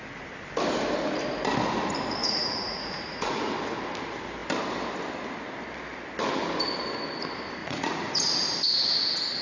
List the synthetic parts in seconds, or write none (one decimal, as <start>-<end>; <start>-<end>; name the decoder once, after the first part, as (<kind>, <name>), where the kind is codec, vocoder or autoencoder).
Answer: 2.2-3.5 (vocoder, Vocos); 7.6-8.1